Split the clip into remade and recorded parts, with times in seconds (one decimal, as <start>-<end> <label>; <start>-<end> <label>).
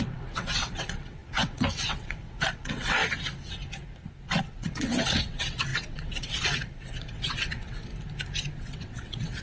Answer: 0.0-3.0 remade; 3.0-4.4 recorded; 4.4-7.9 remade; 7.9-8.5 recorded; 8.5-9.4 remade